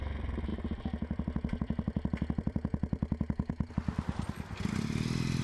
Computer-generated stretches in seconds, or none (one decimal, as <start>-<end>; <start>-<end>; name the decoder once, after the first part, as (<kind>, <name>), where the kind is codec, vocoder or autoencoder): 0.5-3.7 (vocoder, BigVGAN v2)